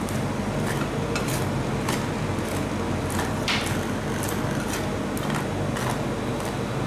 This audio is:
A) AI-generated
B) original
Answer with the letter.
B